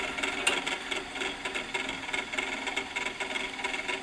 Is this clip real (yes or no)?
yes